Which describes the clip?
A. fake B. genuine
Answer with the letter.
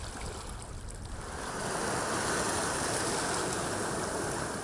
B